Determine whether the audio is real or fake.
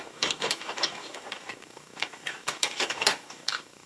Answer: fake